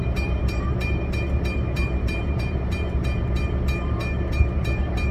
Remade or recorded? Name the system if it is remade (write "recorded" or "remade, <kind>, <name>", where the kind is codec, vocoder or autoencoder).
remade, vocoder, BigVGAN v2